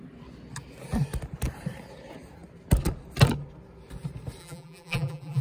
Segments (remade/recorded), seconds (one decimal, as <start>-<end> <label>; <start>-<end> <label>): 0.0-4.4 recorded; 4.4-5.4 remade

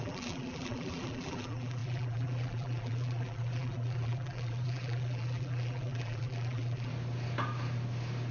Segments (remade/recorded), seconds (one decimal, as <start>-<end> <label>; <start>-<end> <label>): 0.0-6.9 remade; 6.9-8.3 recorded

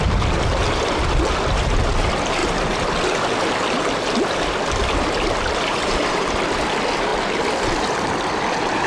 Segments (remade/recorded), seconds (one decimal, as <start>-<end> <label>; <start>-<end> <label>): 0.0-8.9 recorded

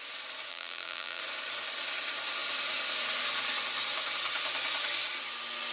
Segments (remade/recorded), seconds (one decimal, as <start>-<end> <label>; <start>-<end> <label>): 0.0-0.5 recorded; 0.5-1.2 remade; 1.2-5.7 recorded

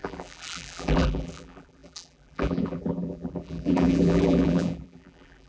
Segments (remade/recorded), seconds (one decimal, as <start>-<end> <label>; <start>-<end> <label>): 0.0-5.5 remade

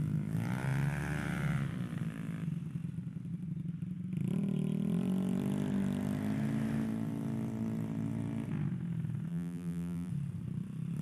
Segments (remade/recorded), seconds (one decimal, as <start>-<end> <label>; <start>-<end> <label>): 0.0-9.3 recorded; 9.3-10.1 remade; 10.1-11.0 recorded

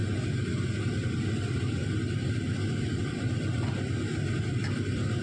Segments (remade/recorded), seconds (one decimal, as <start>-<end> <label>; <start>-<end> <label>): 0.0-5.2 remade

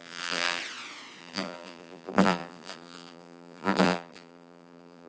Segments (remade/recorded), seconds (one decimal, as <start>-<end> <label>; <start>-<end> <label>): 0.0-0.6 remade; 0.6-1.2 recorded; 1.2-5.1 remade